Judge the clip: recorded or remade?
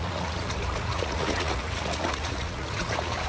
remade